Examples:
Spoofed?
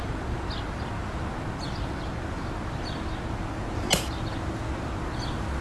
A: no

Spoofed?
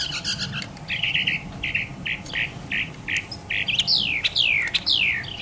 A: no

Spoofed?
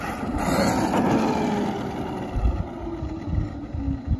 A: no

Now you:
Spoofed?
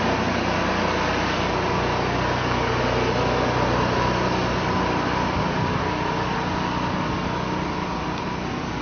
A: no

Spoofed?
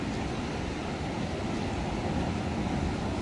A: no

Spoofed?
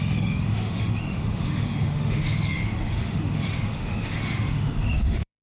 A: yes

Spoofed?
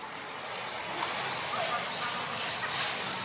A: no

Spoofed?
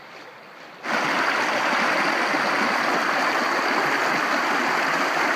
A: no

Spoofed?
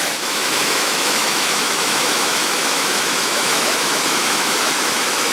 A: yes